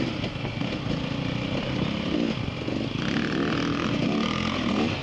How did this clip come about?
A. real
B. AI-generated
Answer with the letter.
A